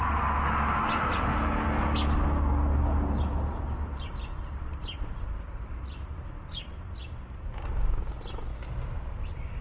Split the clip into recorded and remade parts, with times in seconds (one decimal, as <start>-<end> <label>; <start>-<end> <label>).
0.0-9.6 recorded